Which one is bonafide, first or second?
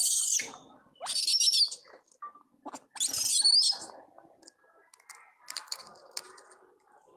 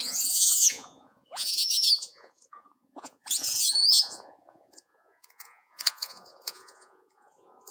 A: first